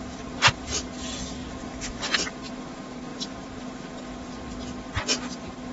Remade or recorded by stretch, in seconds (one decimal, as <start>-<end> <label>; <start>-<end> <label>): 0.0-1.4 recorded; 1.4-2.6 remade; 2.6-3.1 recorded; 3.1-3.8 remade; 3.8-5.7 recorded